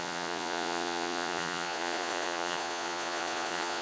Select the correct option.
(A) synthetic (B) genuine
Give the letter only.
A